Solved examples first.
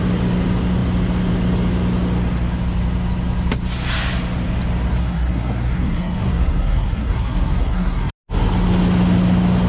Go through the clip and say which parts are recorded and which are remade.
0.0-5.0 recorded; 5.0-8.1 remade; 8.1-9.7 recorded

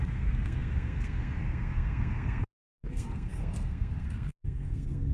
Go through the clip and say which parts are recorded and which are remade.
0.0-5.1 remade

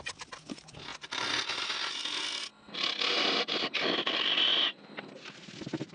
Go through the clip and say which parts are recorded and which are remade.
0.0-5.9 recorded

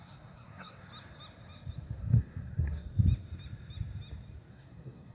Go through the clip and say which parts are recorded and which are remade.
0.0-0.9 remade; 0.9-2.0 recorded; 2.0-2.9 remade; 2.9-4.5 recorded; 4.5-5.1 remade

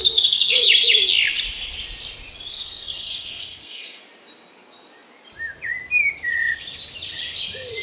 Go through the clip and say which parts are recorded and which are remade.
0.0-0.6 remade; 0.6-2.5 recorded; 2.5-4.0 remade; 4.0-7.8 recorded

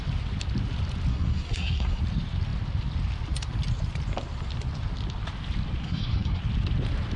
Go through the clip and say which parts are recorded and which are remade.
0.0-1.1 recorded; 1.1-2.0 remade; 2.0-5.8 recorded; 5.8-6.4 remade; 6.4-7.2 recorded